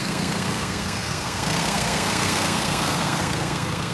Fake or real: fake